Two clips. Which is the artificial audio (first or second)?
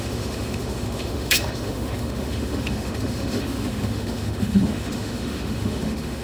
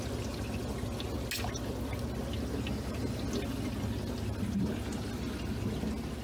first